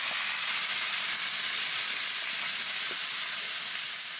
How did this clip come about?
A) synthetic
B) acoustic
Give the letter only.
B